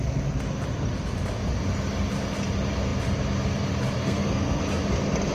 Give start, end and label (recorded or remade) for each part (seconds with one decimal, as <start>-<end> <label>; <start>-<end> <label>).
0.0-4.0 recorded; 4.0-4.6 remade; 4.6-5.3 recorded